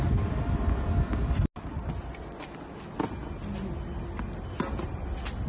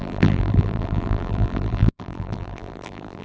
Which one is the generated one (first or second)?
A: second